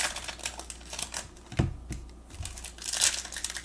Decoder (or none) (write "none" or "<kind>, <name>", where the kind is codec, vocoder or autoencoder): none